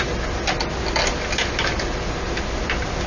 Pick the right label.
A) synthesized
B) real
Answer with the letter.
B